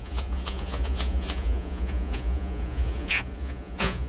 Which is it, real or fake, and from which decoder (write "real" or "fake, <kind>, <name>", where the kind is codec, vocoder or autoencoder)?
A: fake, vocoder, Vocos